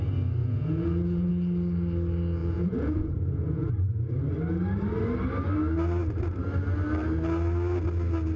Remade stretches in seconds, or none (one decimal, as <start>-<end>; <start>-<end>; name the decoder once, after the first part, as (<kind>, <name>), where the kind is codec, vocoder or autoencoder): 0.4-1.3 (vocoder, Vocos); 2.4-3.7